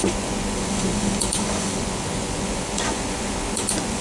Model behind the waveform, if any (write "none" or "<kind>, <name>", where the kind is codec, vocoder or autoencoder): vocoder, Vocos